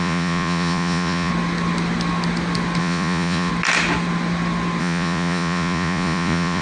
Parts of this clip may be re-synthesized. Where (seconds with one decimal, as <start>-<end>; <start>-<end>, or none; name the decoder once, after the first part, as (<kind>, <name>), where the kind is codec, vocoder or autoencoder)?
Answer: 0.0-1.3 (vocoder, Vocos); 2.8-3.5; 4.8-6.6